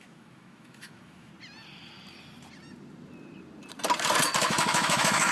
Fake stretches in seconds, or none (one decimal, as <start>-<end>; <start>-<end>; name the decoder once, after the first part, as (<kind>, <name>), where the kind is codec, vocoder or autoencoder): 0.0-1.3 (autoencoder, DAC-VAE); 4.4-5.3